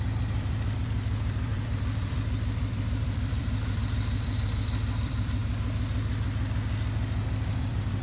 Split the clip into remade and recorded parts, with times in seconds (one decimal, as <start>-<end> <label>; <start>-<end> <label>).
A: 0.0-5.4 remade; 5.4-7.5 recorded; 7.5-8.0 remade